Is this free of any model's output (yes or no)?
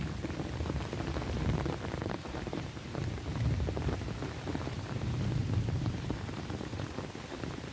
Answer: no